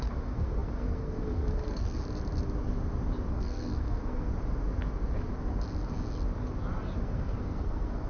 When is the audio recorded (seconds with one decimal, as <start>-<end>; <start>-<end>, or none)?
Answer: 2.0-3.3; 4.3-7.0